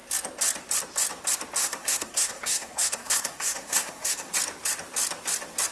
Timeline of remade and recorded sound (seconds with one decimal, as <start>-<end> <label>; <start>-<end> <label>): 0.0-1.6 recorded; 1.6-4.3 remade; 4.3-5.7 recorded